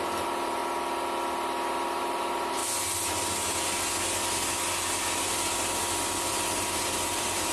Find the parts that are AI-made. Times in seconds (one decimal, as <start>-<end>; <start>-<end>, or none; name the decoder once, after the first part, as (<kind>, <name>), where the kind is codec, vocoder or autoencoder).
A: 0.0-0.6 (vocoder, BigVGAN v2); 2.0-2.6; 6.3-7.5